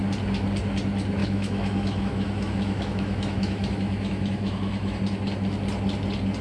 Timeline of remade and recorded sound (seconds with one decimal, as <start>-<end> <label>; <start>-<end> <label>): 0.0-1.2 recorded; 1.2-5.0 remade; 5.0-6.4 recorded